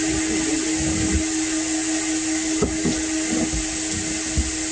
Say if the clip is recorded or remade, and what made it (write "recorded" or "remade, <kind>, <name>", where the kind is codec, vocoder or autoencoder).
recorded